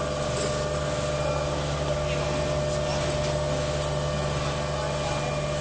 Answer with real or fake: real